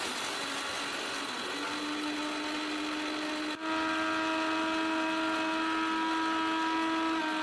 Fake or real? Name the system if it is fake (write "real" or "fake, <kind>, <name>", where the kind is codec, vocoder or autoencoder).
real